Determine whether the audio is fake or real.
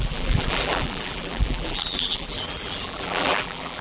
fake